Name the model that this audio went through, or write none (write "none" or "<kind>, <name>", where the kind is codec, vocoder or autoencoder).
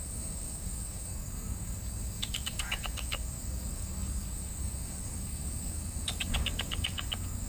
codec, DAC